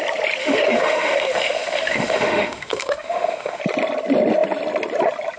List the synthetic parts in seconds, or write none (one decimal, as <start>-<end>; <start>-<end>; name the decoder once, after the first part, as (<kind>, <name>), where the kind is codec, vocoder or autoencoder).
0.4-3.6 (autoencoder, DAC-VAE)

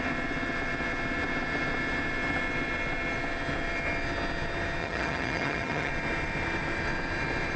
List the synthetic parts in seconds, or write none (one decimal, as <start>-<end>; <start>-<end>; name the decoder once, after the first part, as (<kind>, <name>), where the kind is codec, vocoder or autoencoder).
4.8-5.9 (vocoder, HiFi-GAN)

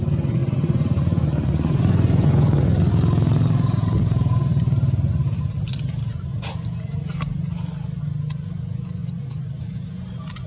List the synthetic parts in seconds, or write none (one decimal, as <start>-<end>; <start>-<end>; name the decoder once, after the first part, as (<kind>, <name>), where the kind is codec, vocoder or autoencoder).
0.4-2.9 (vocoder, Vocos); 9.0-9.6

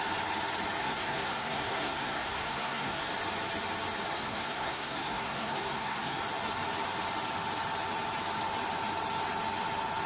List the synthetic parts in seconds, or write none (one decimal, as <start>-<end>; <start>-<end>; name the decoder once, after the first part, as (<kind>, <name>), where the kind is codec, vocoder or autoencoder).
0.8-3.1 (codec, SNAC); 4.1-6.2

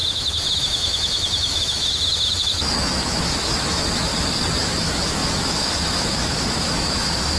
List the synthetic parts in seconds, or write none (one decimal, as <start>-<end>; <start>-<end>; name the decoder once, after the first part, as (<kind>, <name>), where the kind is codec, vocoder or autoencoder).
0.0-4.1 (autoencoder, DAC-VAE); 4.6-7.4

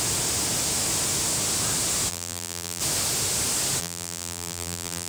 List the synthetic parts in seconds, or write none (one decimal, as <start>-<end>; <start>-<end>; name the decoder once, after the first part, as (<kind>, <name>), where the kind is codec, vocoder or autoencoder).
2.1-2.8 (vocoder, BigVGAN v2); 3.8-5.1

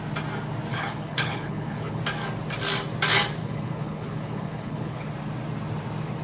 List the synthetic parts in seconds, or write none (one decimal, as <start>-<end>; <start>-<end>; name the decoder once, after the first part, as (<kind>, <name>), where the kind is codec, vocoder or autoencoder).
0.7-2.0 (codec, HILCodec); 3.4-5.1